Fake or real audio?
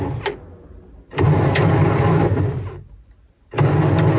real